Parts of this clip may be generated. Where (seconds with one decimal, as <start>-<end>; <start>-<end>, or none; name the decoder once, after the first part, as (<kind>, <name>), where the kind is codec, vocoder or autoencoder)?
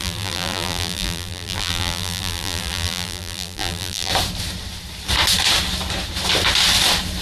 0.0-4.1 (vocoder, BigVGAN v2)